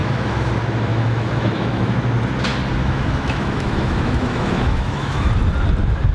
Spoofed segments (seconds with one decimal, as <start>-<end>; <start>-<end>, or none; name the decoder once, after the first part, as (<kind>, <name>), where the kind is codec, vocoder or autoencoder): 0.0-0.5 (autoencoder, DAC-VAE); 0.9-2.0; 2.8-5.3